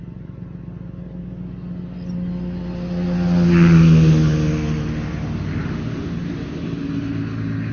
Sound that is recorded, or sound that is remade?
recorded